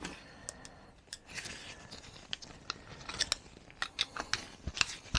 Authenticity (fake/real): real